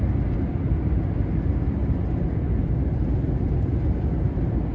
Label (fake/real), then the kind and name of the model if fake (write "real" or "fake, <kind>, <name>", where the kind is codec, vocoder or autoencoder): real